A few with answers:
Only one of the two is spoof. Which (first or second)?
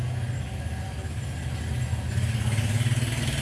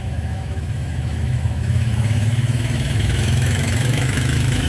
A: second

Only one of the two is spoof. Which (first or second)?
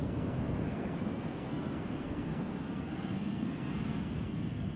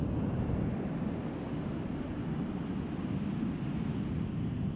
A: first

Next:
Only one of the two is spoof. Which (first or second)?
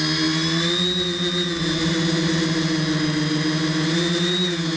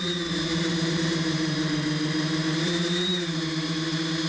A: second